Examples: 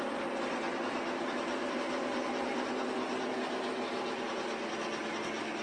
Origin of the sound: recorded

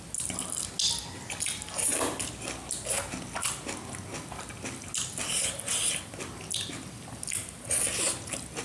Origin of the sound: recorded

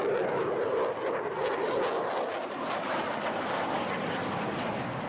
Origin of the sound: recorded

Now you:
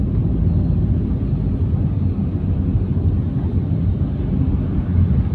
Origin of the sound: recorded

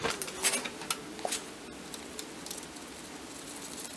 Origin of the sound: recorded